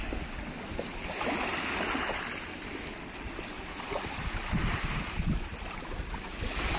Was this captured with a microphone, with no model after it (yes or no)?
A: yes